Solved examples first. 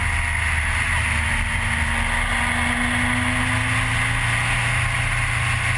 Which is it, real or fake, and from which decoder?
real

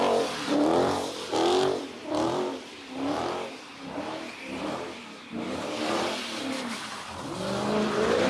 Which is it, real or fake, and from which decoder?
fake, vocoder, BigVGAN v2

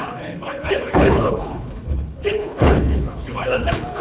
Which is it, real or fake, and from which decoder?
fake, codec, HILCodec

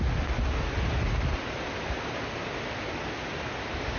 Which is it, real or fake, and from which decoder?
real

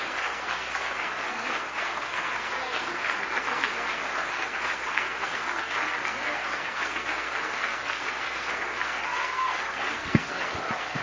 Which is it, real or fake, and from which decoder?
fake, codec, SNAC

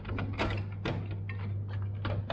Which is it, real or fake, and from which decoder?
real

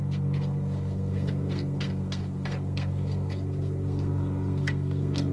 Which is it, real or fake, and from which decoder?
fake, codec, SNAC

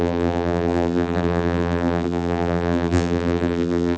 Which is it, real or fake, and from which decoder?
fake, vocoder, BigVGAN v2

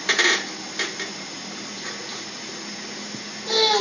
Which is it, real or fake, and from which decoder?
real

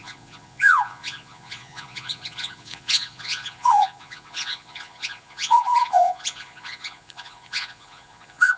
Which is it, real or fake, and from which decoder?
fake, vocoder, Vocos